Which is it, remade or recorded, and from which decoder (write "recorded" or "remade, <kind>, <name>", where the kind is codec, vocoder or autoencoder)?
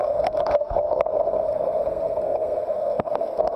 remade, codec, SNAC